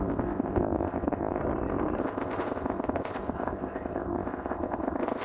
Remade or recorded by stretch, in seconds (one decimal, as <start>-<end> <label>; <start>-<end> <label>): 0.0-1.4 remade; 1.4-2.0 recorded; 2.0-5.2 remade